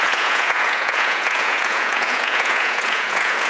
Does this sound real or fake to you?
fake